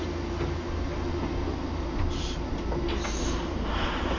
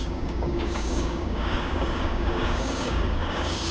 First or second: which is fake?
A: second